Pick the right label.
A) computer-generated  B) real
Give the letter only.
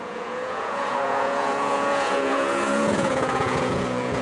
A